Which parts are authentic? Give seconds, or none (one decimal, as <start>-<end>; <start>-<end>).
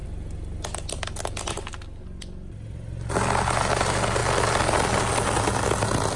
0.0-6.2